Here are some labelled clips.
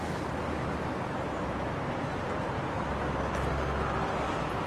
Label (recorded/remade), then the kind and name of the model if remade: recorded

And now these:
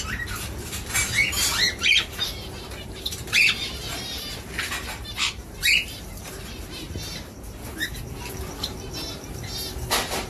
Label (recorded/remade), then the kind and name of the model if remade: remade, vocoder, BigVGAN v2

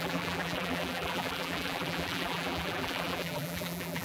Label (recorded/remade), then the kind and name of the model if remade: remade, vocoder, BigVGAN v2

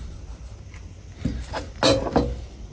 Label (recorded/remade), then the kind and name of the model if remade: recorded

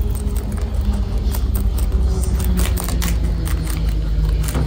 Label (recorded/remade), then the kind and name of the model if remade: recorded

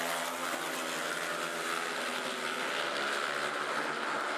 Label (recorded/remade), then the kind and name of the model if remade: recorded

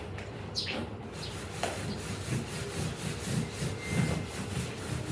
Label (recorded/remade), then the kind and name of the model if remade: recorded